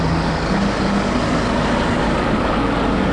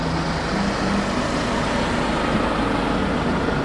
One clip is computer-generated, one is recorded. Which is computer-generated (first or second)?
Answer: first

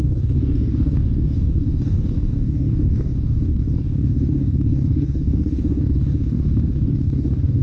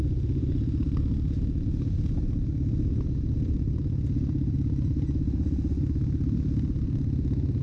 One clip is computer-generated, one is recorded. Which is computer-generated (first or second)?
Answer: first